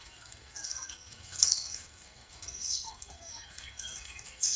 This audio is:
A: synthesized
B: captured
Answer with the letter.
A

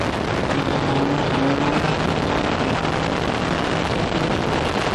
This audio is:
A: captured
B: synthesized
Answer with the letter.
A